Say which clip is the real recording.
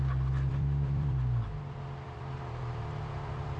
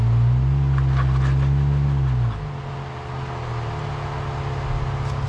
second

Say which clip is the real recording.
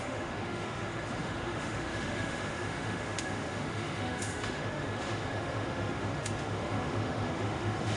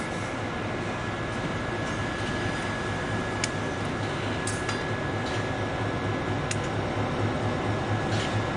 second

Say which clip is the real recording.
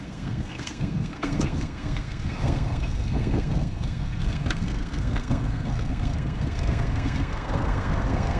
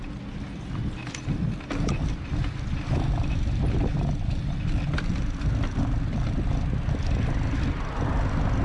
second